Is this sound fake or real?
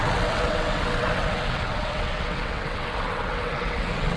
fake